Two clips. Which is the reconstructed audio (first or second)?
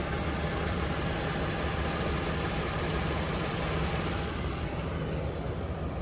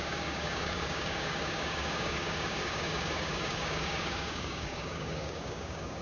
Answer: second